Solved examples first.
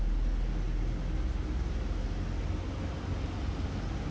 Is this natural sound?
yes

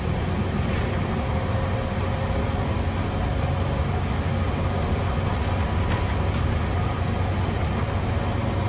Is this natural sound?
yes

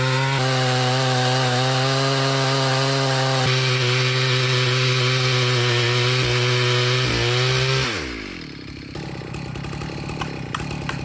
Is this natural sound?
yes